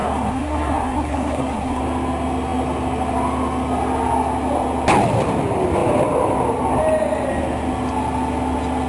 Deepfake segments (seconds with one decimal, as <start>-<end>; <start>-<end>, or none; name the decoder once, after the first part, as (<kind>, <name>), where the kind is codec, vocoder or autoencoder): 0.0-1.8 (codec, SNAC)